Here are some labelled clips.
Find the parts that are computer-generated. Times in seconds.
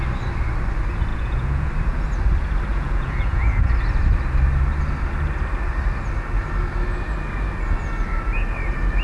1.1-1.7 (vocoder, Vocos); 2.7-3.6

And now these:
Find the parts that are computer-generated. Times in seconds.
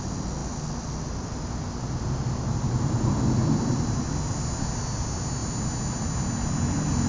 none